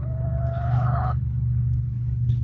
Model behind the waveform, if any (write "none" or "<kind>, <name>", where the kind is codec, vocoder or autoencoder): codec, HILCodec